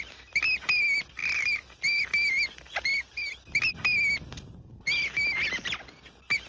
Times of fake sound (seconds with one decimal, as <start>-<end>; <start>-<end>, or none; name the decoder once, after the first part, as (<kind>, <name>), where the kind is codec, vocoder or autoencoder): none